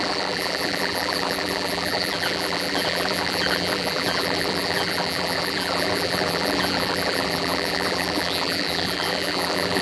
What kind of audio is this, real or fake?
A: fake